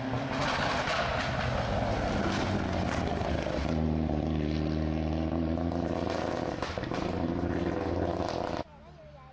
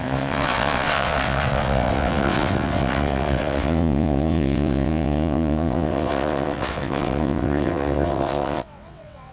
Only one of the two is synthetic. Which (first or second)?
second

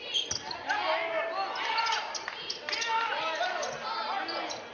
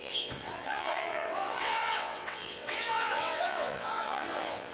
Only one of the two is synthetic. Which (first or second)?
second